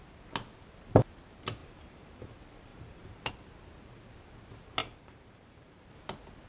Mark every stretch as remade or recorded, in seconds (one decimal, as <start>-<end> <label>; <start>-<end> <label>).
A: 0.0-1.6 recorded; 1.6-2.3 remade; 2.3-2.7 recorded; 2.7-3.3 remade; 3.3-4.8 recorded; 4.8-5.9 remade; 5.9-6.5 recorded